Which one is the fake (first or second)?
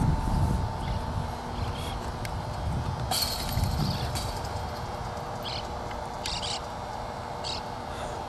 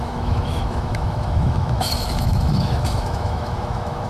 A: second